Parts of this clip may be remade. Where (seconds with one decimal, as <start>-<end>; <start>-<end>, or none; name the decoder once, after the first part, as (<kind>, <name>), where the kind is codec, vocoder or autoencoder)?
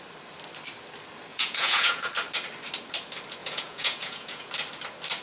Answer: 1.3-2.1 (vocoder, Vocos); 3.4-4.5